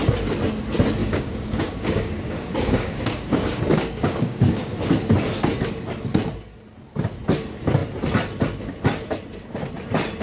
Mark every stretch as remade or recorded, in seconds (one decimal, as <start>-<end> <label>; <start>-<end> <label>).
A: 0.0-1.0 recorded; 1.0-4.9 remade; 4.9-10.2 recorded